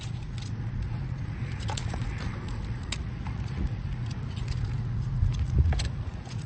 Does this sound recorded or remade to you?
remade